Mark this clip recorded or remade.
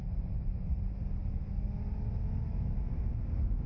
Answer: recorded